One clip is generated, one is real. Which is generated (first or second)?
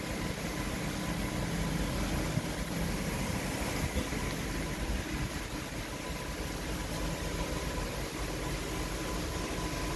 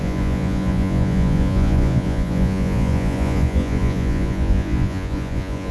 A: second